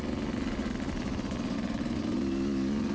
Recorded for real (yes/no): yes